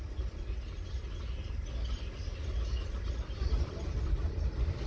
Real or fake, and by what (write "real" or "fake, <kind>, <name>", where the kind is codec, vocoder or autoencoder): real